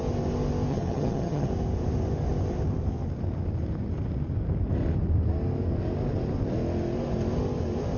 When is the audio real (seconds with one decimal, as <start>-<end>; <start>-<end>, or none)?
0.0-0.7; 1.5-8.0